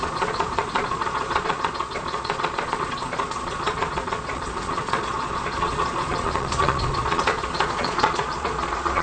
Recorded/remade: remade